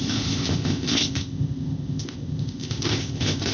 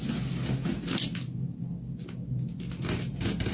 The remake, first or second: first